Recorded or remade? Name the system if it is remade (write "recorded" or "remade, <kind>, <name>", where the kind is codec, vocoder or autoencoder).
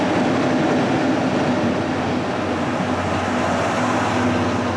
recorded